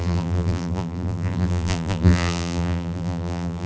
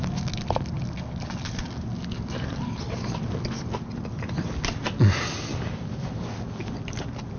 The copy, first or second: first